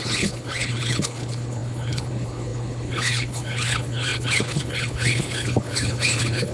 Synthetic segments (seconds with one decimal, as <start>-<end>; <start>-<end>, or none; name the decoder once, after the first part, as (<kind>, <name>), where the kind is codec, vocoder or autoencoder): 0.0-6.5 (codec, HILCodec)